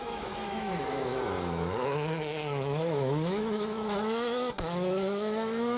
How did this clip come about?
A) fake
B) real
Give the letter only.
A